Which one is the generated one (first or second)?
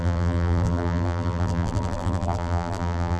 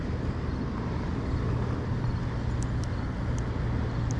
first